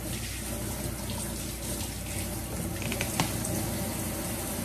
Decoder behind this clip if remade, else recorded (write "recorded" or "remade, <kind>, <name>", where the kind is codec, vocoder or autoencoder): recorded